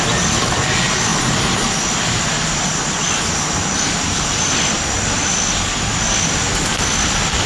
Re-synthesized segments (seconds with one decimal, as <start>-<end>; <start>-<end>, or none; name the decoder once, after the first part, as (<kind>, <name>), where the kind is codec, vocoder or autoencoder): none

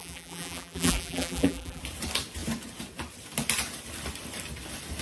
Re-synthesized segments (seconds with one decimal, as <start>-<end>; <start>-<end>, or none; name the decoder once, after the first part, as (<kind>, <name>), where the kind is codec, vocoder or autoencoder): 0.0-1.8 (vocoder, BigVGAN v2)

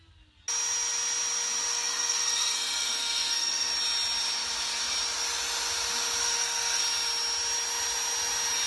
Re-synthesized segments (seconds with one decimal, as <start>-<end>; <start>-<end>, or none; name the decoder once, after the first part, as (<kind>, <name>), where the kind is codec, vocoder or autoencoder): 1.7-3.7 (codec, SNAC); 6.2-6.8

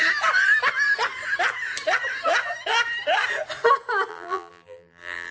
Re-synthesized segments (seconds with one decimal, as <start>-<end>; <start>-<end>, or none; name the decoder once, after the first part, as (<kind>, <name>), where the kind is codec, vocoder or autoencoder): 4.1-5.3 (vocoder, BigVGAN v2)